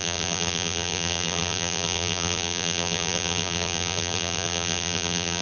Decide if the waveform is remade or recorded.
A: remade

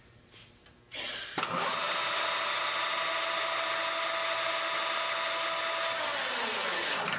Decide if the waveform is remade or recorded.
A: recorded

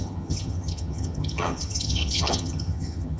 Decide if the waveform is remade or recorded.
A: remade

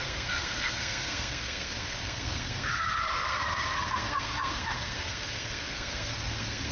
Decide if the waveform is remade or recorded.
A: remade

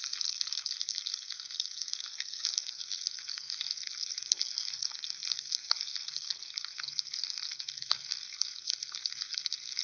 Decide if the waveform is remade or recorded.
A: remade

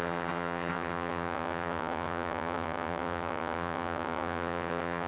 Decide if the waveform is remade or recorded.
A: remade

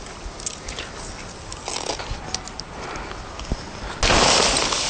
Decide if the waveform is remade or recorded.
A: recorded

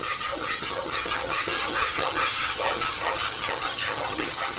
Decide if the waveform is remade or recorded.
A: remade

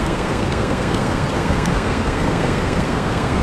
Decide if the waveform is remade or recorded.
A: remade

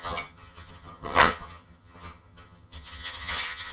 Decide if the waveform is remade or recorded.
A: remade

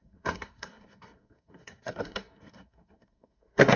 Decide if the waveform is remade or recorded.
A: remade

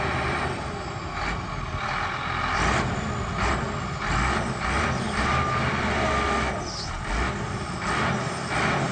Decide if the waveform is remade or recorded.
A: recorded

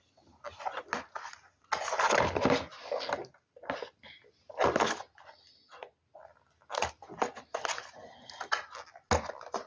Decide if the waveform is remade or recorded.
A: recorded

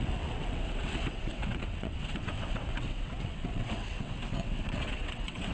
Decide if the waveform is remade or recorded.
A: remade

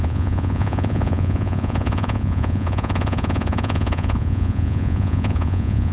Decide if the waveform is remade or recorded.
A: remade